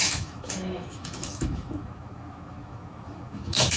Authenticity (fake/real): fake